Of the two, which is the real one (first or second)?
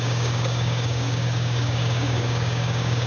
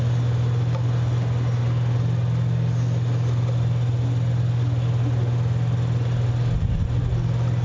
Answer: second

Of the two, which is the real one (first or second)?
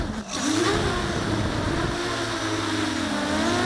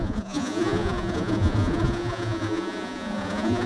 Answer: first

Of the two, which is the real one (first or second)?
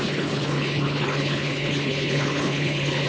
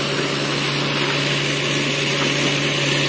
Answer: second